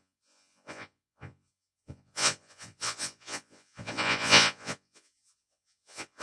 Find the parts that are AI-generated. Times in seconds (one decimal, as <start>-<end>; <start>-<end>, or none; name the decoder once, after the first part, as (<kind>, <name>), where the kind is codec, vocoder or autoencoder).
0.0-6.2 (vocoder, Vocos)